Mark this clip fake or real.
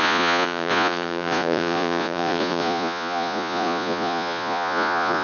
fake